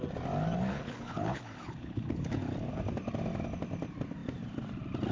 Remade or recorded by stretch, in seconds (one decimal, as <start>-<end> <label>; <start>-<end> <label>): 0.0-0.7 recorded; 0.7-2.4 remade; 2.4-5.1 recorded